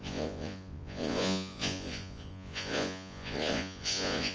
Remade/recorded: remade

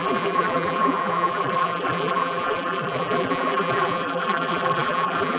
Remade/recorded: remade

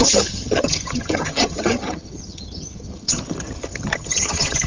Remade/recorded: remade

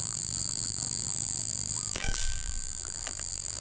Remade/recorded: remade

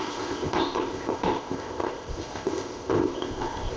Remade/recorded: remade